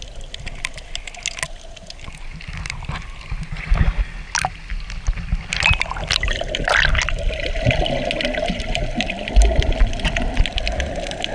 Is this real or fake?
real